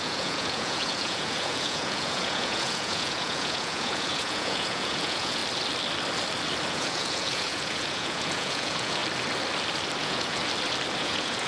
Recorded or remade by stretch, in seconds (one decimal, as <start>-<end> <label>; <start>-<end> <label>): 0.0-5.4 remade; 5.4-6.7 recorded; 6.7-9.0 remade; 9.0-10.0 recorded; 10.0-10.4 remade; 10.4-11.0 recorded; 11.0-11.5 remade

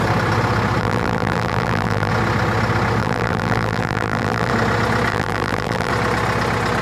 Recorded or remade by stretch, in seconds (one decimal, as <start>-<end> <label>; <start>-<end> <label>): 0.0-0.8 recorded; 0.8-2.1 remade; 2.1-3.0 recorded; 3.0-4.5 remade; 4.5-5.1 recorded; 5.1-5.9 remade; 5.9-6.8 recorded

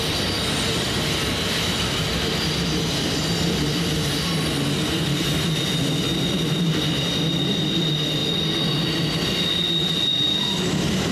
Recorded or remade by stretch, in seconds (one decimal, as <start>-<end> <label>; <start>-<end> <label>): 0.0-11.1 recorded